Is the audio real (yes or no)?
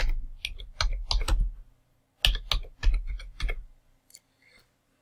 yes